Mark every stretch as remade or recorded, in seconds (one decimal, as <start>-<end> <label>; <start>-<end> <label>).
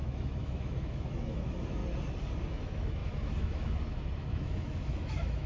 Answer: 0.0-1.8 remade; 1.8-2.5 recorded; 2.5-5.5 remade